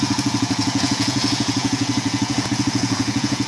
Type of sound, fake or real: fake